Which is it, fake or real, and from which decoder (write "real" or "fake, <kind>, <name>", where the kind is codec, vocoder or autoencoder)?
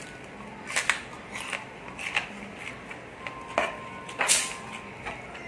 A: real